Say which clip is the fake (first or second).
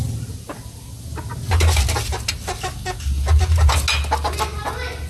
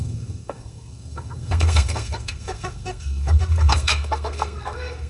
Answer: second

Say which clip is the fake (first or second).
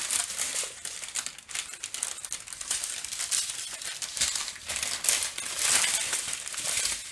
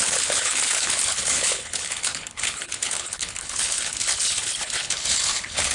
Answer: second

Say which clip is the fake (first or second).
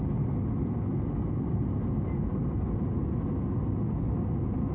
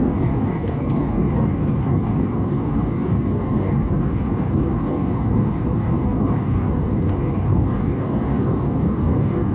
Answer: second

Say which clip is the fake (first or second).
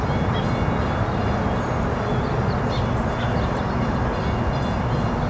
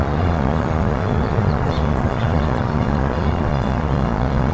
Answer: second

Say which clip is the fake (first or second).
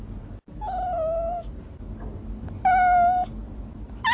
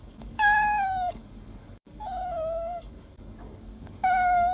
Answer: second